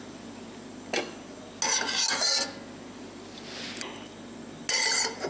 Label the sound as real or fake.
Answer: real